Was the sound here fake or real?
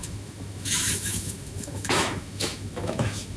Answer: fake